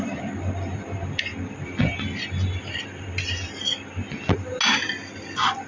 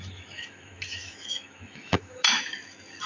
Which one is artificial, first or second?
second